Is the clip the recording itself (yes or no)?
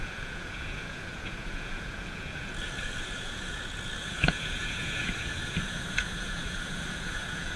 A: no